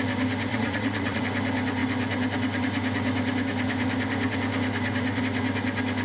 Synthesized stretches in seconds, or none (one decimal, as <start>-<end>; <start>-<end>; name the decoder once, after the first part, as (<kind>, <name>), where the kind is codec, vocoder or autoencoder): 0.5-1.2 (vocoder, Vocos)